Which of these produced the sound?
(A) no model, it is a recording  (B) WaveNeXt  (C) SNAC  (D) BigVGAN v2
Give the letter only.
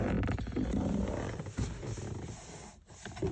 A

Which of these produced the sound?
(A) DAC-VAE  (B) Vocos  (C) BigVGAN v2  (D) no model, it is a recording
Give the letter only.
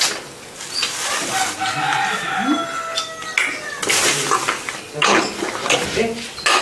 D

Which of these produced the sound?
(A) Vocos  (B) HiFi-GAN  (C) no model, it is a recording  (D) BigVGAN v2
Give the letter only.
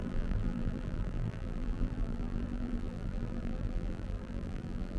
D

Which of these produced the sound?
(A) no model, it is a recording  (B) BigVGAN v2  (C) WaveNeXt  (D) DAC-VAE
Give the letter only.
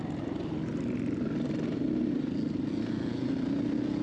A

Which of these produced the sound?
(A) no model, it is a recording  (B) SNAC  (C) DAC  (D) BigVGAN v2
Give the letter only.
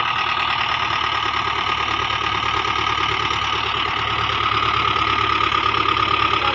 A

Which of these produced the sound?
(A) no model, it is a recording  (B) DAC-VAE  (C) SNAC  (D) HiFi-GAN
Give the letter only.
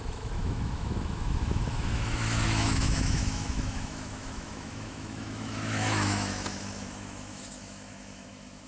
B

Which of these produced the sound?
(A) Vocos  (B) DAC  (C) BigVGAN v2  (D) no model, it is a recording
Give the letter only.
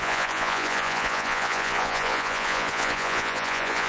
A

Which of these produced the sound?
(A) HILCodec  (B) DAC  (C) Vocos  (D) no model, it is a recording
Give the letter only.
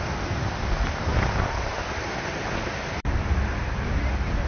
D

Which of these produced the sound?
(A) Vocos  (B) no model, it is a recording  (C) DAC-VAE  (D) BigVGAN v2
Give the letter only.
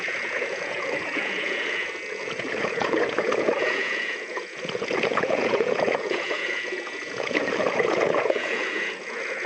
A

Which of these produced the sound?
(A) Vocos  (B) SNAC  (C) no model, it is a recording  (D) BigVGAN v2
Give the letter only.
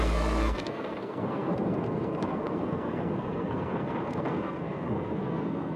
B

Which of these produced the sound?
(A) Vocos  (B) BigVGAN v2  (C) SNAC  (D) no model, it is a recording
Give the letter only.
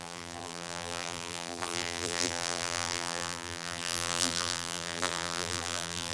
B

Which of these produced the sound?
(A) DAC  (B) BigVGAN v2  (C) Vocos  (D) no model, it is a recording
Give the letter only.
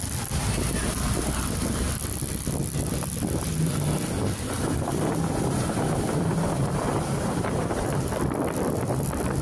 D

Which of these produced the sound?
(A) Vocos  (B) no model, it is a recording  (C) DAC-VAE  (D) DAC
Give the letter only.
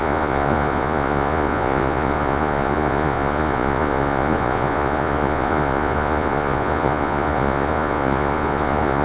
A